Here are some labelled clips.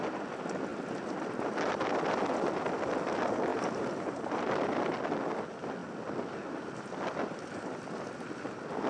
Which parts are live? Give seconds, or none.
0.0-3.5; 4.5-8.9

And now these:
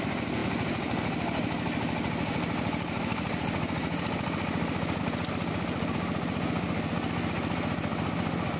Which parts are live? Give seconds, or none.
0.0-8.6

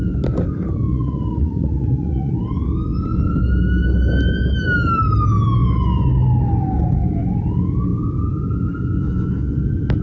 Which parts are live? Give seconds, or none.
0.0-0.9; 2.3-10.0

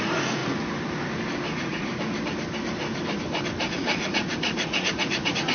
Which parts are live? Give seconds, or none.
0.4-1.5; 1.9-3.6

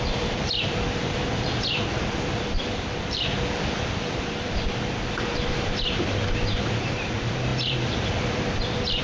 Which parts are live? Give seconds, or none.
none